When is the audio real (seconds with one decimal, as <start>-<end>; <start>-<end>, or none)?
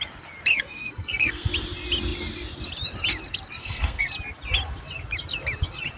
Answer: 0.0-0.5; 1.5-3.6; 4.1-6.0